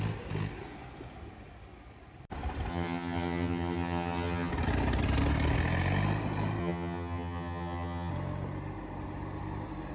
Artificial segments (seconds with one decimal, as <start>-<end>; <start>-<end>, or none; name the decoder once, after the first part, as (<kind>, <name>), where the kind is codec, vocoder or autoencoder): 2.7-4.5 (vocoder, HiFi-GAN); 6.6-8.1